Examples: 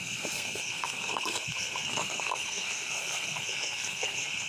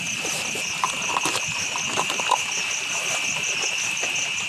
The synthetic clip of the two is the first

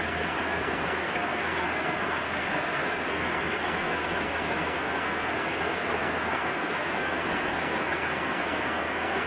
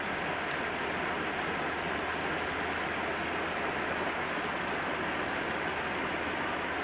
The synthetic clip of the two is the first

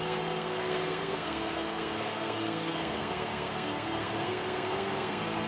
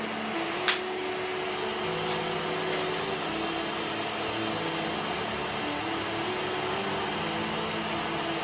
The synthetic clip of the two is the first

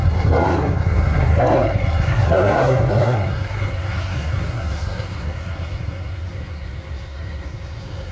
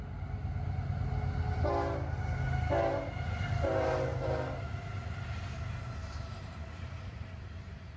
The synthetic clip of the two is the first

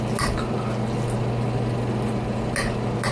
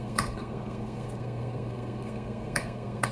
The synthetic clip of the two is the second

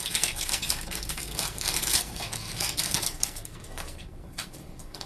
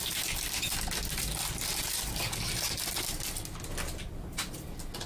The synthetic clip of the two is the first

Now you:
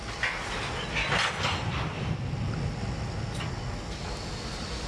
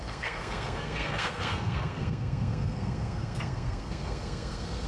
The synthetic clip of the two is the second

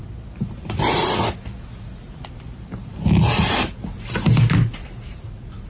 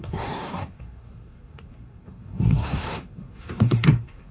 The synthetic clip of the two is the second